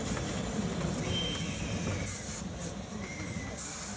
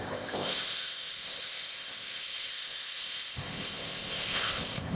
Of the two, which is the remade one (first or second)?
second